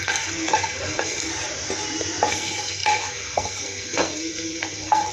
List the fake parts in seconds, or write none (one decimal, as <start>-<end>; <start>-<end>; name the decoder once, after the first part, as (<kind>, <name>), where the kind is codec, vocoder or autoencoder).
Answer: 0.0-1.3 (codec, SNAC); 2.3-5.1